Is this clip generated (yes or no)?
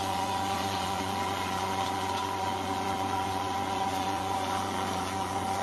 yes